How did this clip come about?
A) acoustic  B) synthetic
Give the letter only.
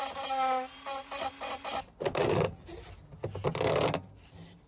A